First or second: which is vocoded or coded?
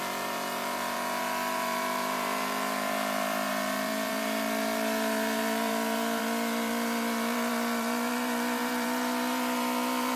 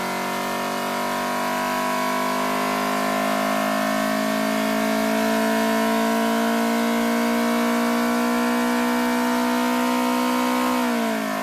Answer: first